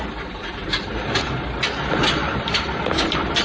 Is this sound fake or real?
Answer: real